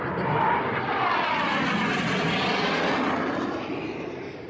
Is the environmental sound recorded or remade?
recorded